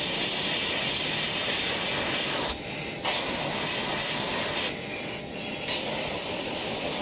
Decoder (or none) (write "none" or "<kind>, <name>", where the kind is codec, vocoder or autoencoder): none